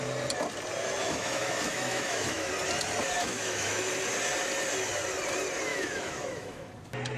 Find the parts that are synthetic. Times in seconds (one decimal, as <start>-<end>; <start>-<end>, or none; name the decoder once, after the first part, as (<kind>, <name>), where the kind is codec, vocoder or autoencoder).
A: 1.0-2.5 (autoencoder, DAC-VAE); 3.2-3.9; 5.7-6.7